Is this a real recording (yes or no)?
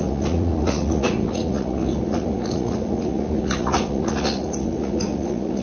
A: no